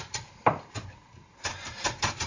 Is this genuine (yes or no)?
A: yes